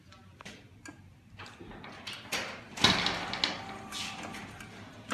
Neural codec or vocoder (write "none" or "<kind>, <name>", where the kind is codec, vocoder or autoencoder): none